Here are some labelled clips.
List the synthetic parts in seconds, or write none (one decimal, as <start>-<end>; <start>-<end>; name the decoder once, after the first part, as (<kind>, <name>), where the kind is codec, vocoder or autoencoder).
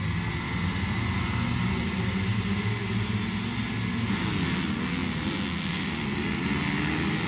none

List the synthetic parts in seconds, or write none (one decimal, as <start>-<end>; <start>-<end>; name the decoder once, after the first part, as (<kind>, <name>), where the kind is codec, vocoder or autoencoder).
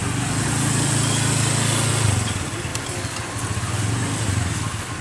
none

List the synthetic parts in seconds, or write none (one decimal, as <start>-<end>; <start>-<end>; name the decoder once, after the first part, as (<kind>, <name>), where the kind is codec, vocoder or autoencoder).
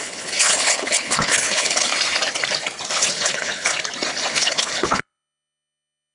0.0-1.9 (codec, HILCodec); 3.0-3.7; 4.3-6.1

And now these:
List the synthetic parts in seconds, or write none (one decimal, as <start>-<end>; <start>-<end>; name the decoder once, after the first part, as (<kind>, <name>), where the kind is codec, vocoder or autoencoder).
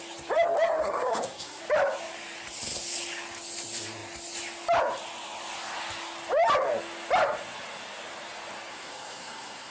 0.8-1.6 (codec, SNAC); 8.7-9.7